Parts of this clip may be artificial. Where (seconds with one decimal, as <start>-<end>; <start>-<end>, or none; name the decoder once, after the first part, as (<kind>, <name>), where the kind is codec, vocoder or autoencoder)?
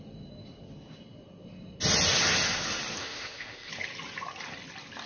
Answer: 3.0-3.7 (codec, ZipCodec)